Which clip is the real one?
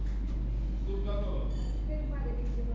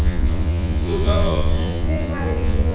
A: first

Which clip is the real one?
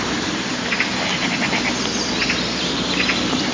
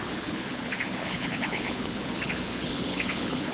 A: first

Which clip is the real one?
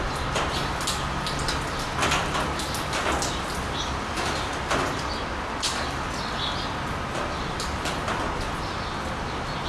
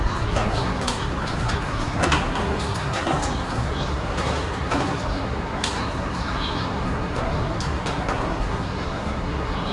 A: first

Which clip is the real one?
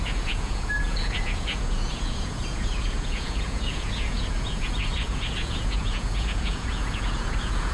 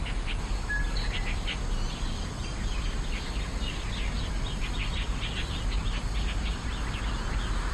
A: second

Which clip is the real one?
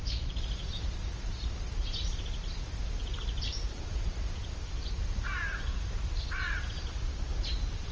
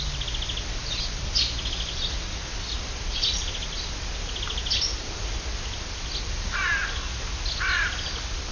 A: second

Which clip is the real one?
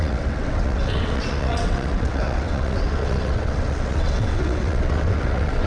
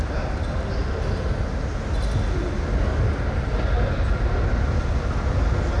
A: second